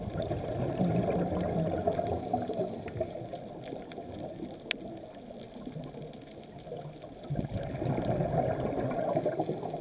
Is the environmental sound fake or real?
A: real